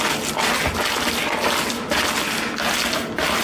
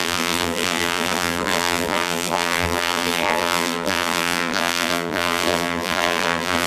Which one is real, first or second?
first